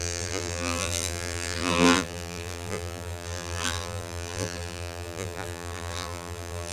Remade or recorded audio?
remade